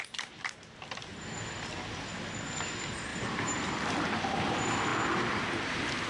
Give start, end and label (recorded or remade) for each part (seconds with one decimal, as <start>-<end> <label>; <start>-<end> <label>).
0.0-3.1 recorded; 3.1-3.7 remade; 3.7-6.1 recorded